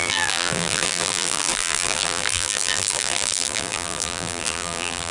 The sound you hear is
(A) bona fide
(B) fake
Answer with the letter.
B